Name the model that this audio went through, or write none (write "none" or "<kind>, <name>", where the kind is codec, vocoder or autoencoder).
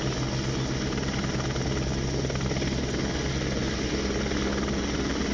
none